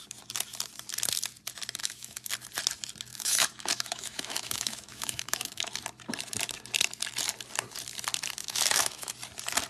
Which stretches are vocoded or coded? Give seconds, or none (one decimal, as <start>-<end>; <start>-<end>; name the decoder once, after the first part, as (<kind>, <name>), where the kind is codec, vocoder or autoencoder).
1.8-2.3 (autoencoder, DAC-VAE); 3.1-5.7; 8.4-9.1

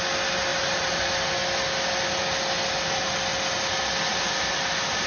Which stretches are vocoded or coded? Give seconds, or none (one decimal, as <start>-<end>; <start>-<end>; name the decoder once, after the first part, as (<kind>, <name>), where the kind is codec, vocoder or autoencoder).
0.5-1.0 (vocoder, BigVGAN v2); 4.1-5.1

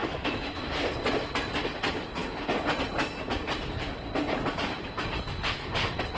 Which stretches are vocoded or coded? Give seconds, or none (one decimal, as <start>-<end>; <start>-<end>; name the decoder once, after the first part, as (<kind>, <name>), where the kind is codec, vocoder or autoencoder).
0.0-0.6 (autoencoder, DAC-VAE)

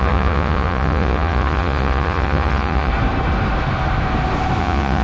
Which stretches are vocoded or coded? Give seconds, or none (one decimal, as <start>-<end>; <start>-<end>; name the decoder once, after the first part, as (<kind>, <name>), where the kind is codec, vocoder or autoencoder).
0.0-2.9 (vocoder, Vocos); 4.6-5.0

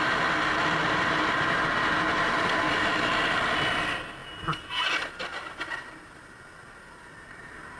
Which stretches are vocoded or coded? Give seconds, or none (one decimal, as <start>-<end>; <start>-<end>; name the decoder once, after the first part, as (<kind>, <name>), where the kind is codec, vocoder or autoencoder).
none

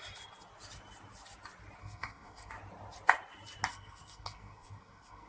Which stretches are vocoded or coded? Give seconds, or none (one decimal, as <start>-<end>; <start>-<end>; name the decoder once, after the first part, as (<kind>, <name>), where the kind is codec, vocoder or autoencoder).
1.8-2.5 (codec, SNAC); 3.7-5.3